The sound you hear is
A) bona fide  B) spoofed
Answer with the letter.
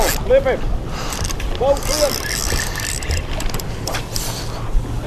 A